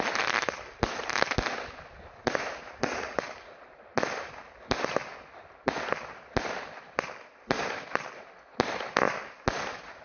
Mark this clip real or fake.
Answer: real